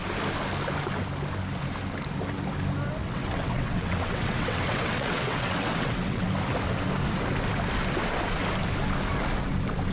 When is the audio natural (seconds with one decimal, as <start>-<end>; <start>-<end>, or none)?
0.0-3.0; 6.3-9.9